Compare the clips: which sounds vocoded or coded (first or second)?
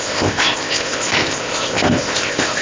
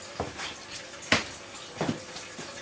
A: first